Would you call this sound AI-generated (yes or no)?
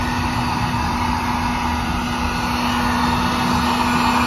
no